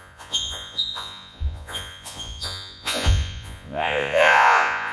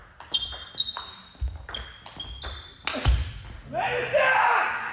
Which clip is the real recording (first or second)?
second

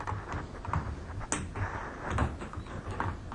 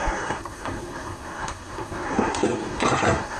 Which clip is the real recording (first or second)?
first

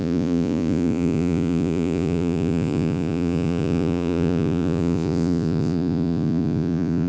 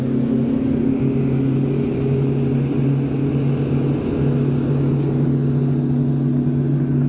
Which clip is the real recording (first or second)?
second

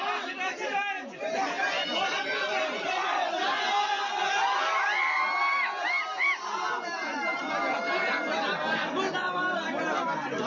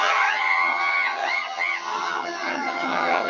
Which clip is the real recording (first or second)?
first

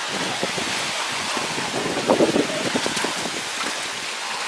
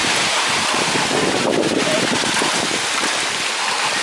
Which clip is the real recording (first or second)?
second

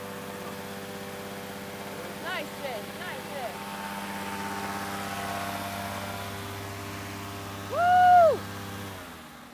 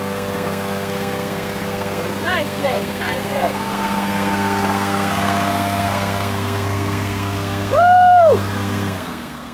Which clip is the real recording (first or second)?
first